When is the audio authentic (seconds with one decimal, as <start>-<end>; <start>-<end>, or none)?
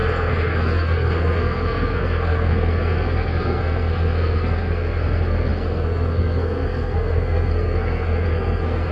none